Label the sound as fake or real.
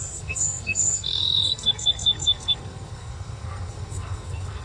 fake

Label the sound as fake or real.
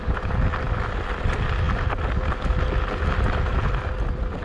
real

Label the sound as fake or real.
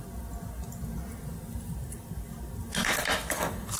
real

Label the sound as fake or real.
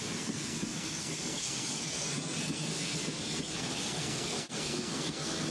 fake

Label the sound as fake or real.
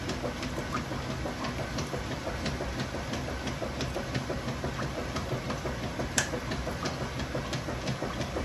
real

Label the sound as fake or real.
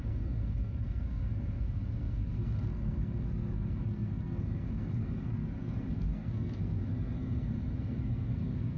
fake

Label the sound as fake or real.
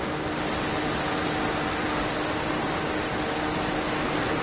real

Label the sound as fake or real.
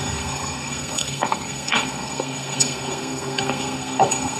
fake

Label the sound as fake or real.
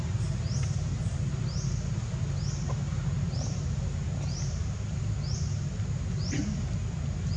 real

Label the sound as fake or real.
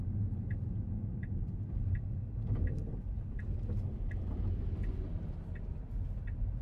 real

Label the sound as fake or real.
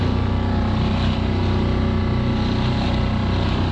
real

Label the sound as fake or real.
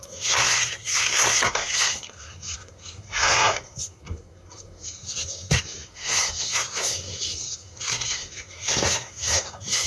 fake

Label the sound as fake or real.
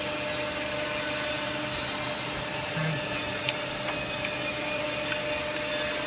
real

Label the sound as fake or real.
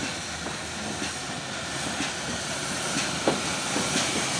real